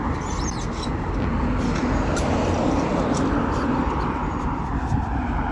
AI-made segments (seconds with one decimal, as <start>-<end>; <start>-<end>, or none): none